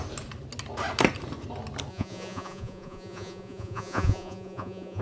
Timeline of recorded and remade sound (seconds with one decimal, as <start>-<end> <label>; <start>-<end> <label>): 0.0-1.9 recorded; 1.9-5.0 remade